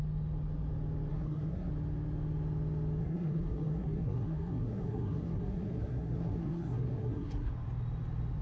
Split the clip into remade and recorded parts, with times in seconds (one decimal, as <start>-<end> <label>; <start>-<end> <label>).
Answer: 0.0-1.1 recorded; 1.1-1.7 remade; 1.7-3.0 recorded; 3.0-7.5 remade; 7.5-8.4 recorded